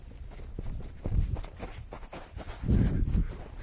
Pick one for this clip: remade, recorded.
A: recorded